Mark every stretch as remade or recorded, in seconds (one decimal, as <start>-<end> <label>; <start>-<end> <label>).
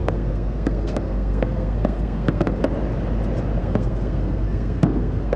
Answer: 0.0-2.6 remade; 2.6-3.6 recorded; 3.6-5.4 remade